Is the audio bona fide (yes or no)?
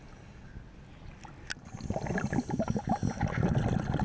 yes